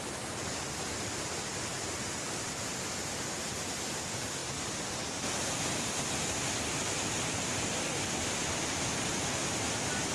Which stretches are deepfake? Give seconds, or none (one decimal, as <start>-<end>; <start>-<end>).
none